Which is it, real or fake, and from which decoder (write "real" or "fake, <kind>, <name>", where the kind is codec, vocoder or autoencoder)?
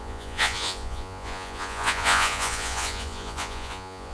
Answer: fake, vocoder, Vocos